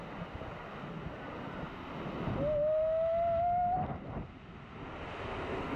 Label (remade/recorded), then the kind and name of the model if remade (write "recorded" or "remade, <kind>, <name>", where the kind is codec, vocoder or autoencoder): recorded